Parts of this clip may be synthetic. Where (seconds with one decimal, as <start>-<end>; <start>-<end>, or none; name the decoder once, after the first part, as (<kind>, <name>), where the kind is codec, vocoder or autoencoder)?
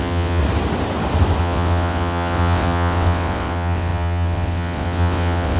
0.0-0.4 (vocoder, WaveNeXt); 1.4-5.6